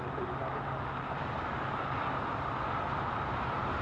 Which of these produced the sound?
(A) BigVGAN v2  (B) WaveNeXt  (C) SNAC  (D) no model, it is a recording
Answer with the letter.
D